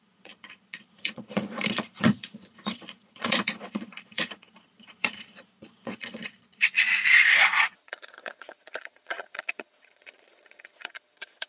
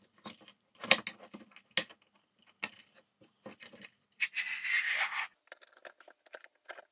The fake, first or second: first